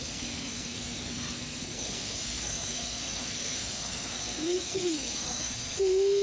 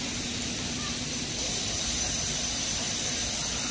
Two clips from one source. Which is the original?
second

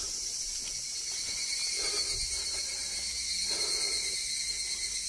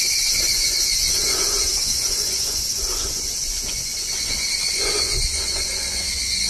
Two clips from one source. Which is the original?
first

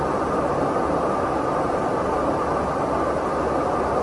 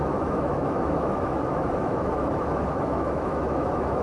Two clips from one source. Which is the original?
first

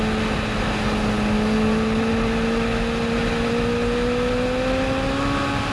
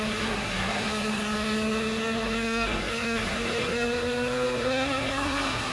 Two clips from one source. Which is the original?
first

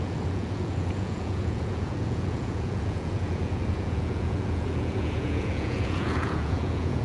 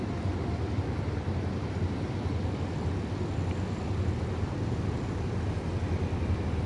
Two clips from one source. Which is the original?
second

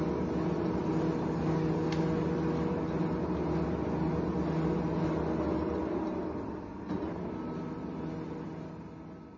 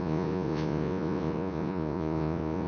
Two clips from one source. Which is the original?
first